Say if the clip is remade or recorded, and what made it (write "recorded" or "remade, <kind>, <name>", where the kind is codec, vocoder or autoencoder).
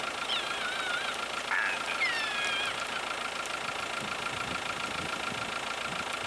recorded